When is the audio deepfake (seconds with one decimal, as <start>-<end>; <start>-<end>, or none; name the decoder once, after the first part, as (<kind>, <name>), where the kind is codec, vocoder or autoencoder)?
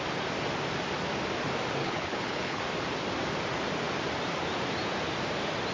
1.8-2.6 (codec, HILCodec)